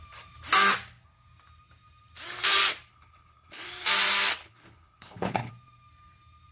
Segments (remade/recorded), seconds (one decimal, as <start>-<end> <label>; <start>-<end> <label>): 0.0-2.9 recorded; 2.9-3.7 remade; 3.7-4.4 recorded; 4.4-5.5 remade; 5.5-6.5 recorded